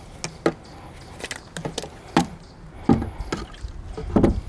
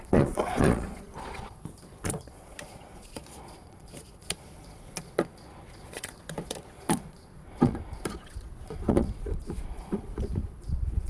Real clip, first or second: first